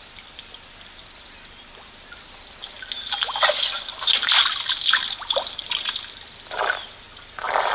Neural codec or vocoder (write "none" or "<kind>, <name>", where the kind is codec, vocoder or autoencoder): none